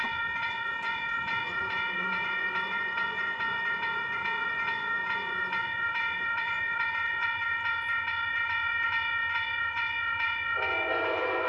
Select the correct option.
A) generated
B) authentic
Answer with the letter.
A